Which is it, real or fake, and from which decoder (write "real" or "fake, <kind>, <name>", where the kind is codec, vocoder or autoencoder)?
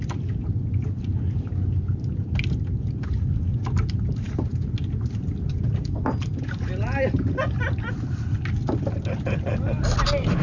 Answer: real